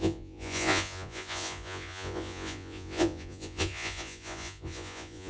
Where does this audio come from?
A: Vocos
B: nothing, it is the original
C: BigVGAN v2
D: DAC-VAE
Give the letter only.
A